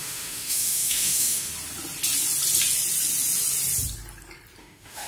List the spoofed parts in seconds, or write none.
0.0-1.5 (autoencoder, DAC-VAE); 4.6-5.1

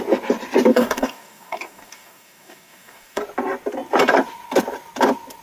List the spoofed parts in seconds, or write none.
0.7-3.2 (codec, DAC)

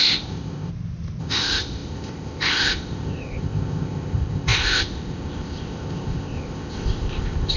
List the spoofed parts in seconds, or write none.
0.0-0.7 (codec, ZipCodec); 1.2-7.6